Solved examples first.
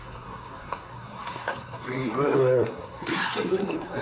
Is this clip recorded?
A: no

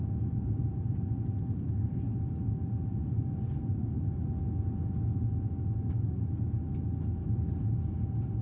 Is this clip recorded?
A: yes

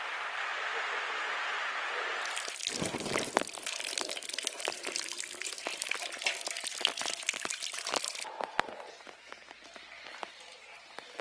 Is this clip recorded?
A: yes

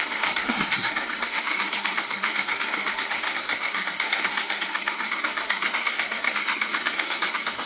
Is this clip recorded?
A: no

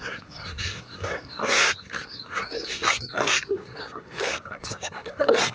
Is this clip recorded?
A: no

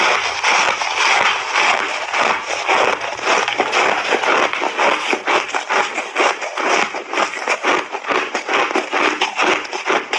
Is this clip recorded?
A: yes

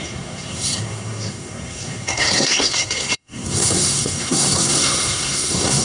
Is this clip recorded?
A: no